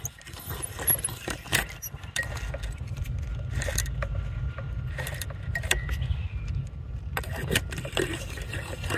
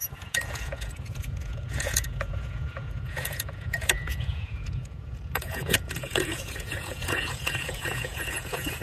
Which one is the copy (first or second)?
second